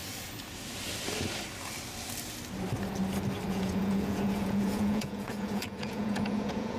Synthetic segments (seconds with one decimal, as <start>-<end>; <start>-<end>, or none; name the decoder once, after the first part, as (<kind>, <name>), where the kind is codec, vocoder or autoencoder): 3.5-6.8 (vocoder, Vocos)